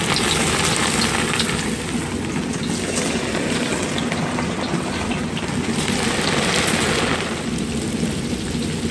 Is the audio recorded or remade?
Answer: recorded